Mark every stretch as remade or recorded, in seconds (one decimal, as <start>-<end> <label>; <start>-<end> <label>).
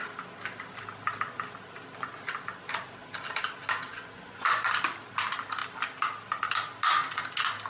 0.0-3.9 recorded; 3.9-4.7 remade; 4.7-7.7 recorded